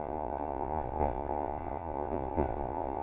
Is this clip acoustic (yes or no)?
no